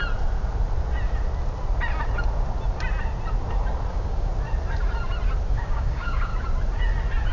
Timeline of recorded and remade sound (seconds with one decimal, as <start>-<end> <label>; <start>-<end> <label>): 0.0-3.9 recorded; 3.9-4.3 remade; 4.3-5.5 recorded; 5.5-6.3 remade; 6.3-7.3 recorded

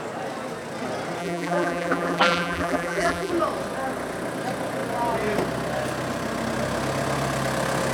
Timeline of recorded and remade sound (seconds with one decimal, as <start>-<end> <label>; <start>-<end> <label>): 0.0-1.2 recorded; 1.2-3.3 remade; 3.3-7.9 recorded

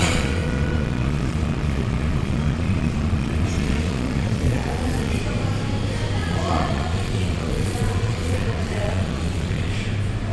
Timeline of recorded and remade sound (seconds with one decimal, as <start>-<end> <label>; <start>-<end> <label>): 0.0-5.2 remade; 5.2-6.2 recorded; 6.2-9.7 remade; 9.7-10.3 recorded

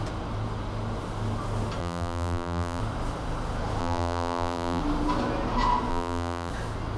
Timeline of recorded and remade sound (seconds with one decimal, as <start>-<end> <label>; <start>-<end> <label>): 0.0-1.8 recorded; 1.8-2.8 remade; 2.8-3.8 recorded; 3.8-4.8 remade; 4.8-5.9 recorded; 5.9-6.5 remade; 6.5-7.0 recorded

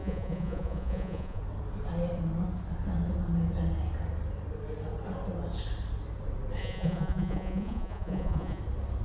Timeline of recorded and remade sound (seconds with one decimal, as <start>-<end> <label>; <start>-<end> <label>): 0.0-1.4 remade; 1.4-6.6 recorded; 6.6-8.6 remade; 8.6-9.0 recorded

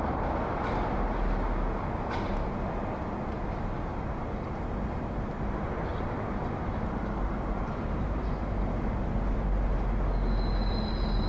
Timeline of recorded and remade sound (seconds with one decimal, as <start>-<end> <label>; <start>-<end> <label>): 0.0-3.9 recorded; 3.9-4.5 remade; 4.5-5.9 recorded; 5.9-9.2 remade; 9.2-11.3 recorded

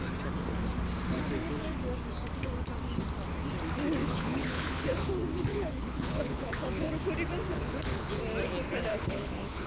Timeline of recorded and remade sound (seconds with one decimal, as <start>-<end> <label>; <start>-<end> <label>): 0.0-4.0 recorded; 4.0-5.1 remade; 5.1-5.5 recorded; 5.5-6.9 remade; 6.9-7.5 recorded; 7.5-8.2 remade; 8.2-8.9 recorded; 8.9-9.7 remade

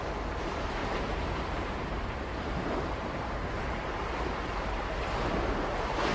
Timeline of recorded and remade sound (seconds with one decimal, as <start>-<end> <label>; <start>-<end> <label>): 0.0-0.8 recorded; 0.8-4.1 remade; 4.1-6.1 recorded